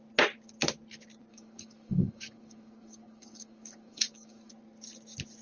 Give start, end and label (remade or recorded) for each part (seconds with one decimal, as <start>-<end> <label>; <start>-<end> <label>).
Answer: 0.0-1.3 recorded; 1.3-4.5 remade; 4.5-5.4 recorded